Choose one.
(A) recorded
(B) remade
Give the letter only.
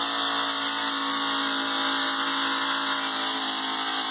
A